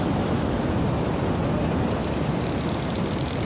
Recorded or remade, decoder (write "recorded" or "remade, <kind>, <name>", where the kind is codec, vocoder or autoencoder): recorded